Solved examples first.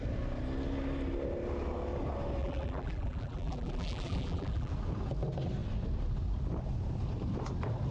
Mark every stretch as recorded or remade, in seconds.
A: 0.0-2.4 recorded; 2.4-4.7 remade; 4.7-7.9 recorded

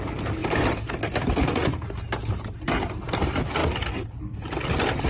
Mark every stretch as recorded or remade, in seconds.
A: 0.0-5.1 recorded

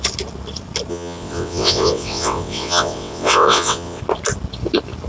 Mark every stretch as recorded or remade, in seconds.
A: 0.0-0.9 recorded; 0.9-4.0 remade; 4.0-5.1 recorded

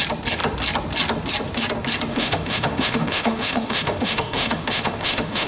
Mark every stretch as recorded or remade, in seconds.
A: 0.0-2.1 recorded; 2.1-5.5 remade

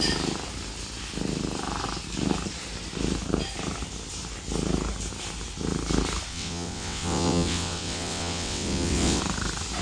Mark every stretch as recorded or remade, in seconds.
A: 0.0-6.3 recorded; 6.3-9.2 remade; 9.2-9.8 recorded

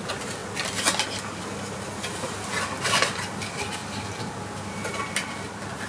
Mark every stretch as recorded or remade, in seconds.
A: 0.0-5.9 recorded

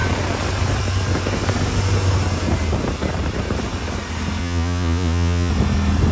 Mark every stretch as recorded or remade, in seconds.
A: 0.0-4.4 recorded; 4.4-5.5 remade; 5.5-6.1 recorded

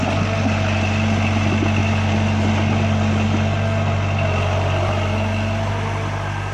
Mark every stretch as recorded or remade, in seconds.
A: 0.0-6.5 recorded